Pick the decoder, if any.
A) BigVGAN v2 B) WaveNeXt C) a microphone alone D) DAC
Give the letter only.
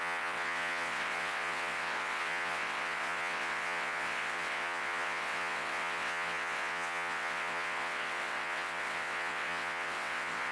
B